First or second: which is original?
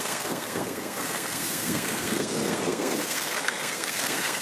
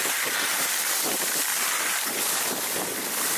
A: second